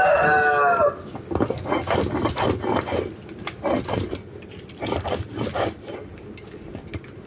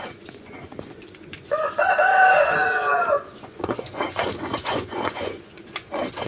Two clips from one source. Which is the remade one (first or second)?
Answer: second